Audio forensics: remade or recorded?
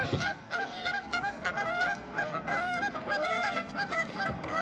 remade